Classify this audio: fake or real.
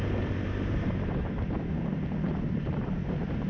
fake